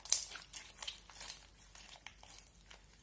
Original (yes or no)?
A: yes